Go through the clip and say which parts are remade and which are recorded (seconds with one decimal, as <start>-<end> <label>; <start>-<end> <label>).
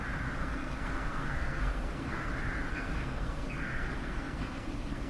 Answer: 0.0-0.4 recorded; 0.4-2.3 remade; 2.3-2.7 recorded; 2.7-5.1 remade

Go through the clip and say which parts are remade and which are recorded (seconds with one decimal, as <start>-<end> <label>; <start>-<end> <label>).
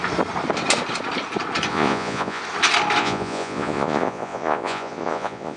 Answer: 0.0-1.7 recorded; 1.7-2.4 remade; 2.4-3.0 recorded; 3.0-5.6 remade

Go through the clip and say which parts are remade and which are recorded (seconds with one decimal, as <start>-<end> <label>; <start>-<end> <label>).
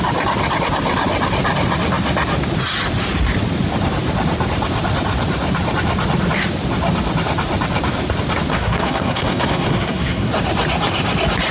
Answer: 0.0-8.5 recorded; 8.5-10.3 remade; 10.3-11.5 recorded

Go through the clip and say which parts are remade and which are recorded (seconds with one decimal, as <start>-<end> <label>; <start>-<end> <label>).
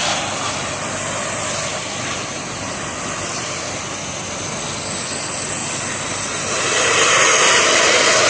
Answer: 0.0-8.3 recorded